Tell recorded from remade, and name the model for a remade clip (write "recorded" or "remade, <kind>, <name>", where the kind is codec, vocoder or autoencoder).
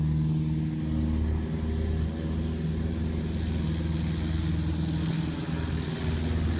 recorded